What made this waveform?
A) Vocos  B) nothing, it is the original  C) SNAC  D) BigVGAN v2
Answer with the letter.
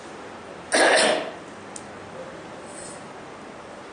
B